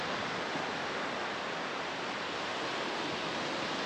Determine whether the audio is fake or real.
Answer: real